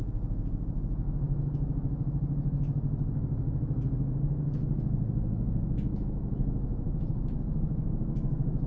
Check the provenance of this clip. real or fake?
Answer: fake